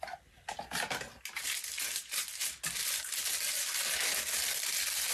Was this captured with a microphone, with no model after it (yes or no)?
yes